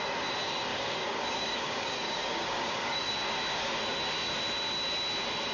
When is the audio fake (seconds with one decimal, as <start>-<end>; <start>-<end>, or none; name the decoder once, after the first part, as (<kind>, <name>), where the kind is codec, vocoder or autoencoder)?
0.7-3.1 (codec, DAC)